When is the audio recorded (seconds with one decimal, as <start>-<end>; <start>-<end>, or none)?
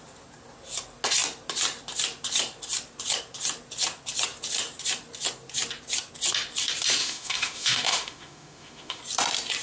0.0-7.0; 9.0-9.6